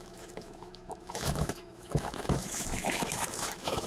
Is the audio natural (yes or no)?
no